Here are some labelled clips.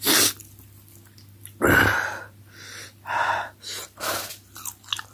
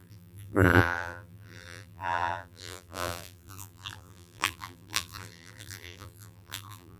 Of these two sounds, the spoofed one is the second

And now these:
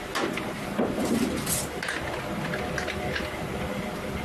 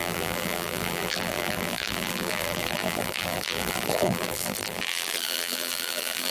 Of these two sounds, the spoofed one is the second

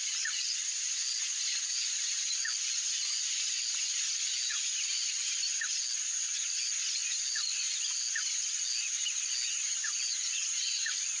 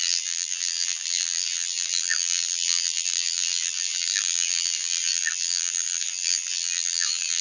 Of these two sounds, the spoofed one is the second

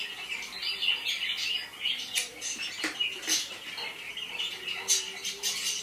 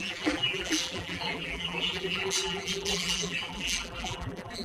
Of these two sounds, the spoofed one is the second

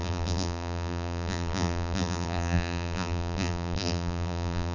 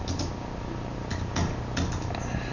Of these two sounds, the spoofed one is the first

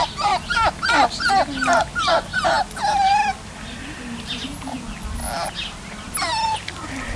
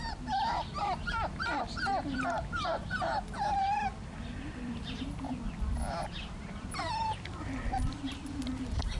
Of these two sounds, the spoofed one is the second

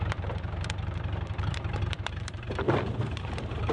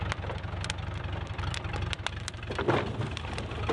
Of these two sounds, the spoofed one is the first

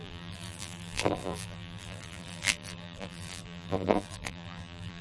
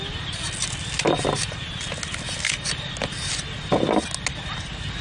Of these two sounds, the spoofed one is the first